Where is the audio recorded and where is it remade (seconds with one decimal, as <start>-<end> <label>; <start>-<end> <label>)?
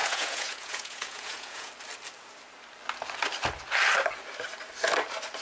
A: 0.0-1.7 remade; 1.7-5.4 recorded